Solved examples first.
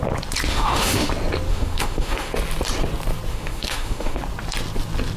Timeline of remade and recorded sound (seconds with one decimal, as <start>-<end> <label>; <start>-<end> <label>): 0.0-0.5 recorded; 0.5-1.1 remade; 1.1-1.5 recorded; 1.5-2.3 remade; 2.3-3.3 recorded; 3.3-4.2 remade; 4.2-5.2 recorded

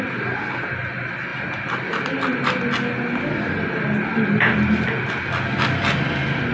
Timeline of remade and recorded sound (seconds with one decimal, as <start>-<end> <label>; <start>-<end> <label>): 0.0-6.5 recorded

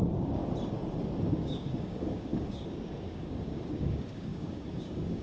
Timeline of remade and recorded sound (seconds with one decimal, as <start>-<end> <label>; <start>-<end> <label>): 0.0-0.4 remade; 0.4-1.2 recorded; 1.2-5.2 remade